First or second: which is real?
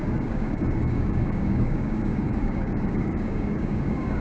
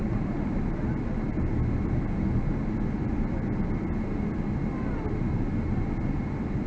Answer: second